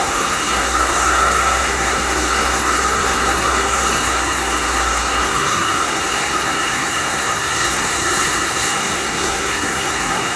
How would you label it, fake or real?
fake